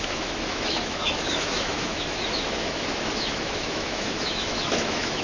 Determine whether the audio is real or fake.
fake